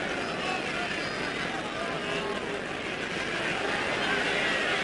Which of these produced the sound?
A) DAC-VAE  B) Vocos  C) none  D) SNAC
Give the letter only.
C